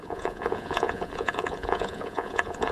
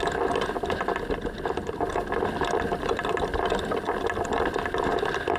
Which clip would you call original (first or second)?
second